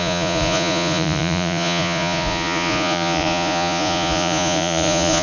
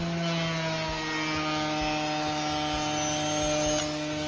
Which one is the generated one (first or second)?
first